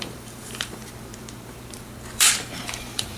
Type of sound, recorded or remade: remade